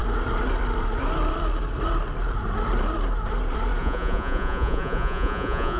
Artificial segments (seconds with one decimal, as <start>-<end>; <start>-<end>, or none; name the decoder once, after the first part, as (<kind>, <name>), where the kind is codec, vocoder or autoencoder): 3.8-5.8 (vocoder, Vocos)